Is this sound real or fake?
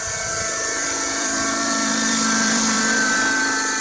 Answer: fake